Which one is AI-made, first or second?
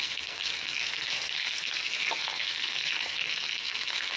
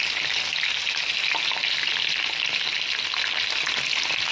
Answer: first